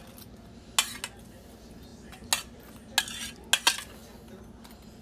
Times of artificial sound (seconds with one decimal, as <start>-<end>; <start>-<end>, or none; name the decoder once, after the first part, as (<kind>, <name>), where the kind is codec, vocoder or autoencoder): none